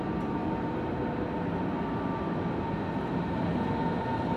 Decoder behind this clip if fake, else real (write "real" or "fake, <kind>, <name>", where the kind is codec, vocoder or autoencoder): real